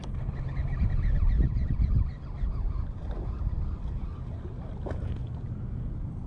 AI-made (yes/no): no